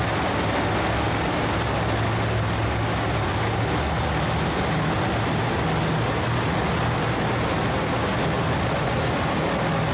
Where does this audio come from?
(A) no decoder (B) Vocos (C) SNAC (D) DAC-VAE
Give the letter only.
A